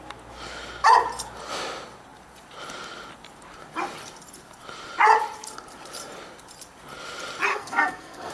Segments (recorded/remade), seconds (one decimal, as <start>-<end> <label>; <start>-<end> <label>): 0.0-7.5 recorded; 7.5-8.3 remade